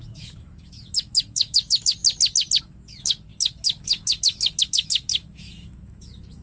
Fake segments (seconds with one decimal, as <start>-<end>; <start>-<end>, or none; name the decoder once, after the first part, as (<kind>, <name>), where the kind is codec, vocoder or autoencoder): 0.0-2.0 (autoencoder, DAC-VAE); 2.6-6.4